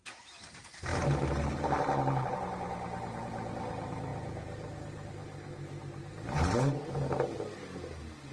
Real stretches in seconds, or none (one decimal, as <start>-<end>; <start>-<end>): none